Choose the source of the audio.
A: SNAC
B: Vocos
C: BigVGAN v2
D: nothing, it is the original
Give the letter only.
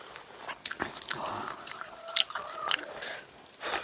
C